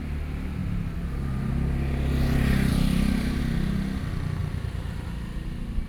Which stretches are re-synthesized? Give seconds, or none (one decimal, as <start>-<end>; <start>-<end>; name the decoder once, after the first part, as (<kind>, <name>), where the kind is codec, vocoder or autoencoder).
0.6-1.5 (vocoder, BigVGAN v2); 2.7-3.4